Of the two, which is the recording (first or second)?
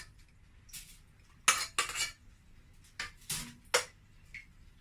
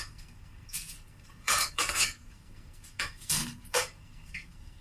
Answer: first